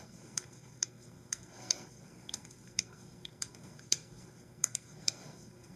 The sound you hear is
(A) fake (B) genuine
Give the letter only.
A